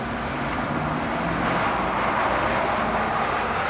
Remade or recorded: recorded